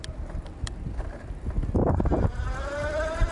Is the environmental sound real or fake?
real